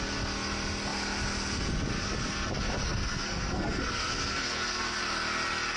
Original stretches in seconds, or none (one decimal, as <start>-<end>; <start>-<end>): 0.0-2.8; 5.0-5.8